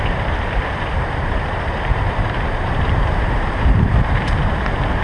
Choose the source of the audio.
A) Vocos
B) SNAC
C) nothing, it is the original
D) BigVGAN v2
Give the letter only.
D